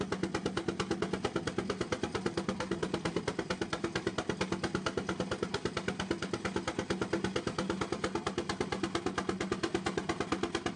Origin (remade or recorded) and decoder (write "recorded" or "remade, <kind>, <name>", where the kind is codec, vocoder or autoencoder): recorded